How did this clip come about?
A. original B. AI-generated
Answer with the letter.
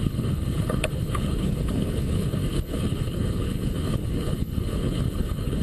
B